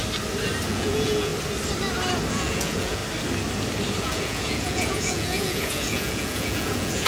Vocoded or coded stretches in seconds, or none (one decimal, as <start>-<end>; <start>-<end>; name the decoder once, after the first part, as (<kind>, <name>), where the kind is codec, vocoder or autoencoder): 0.7-1.3 (vocoder, Vocos); 2.3-3.0; 4.0-7.1